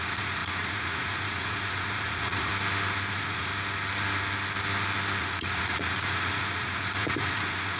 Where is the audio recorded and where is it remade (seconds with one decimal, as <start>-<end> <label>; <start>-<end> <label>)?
0.0-2.5 remade; 2.5-3.1 recorded; 3.1-3.5 remade; 3.5-5.2 recorded; 5.2-7.8 remade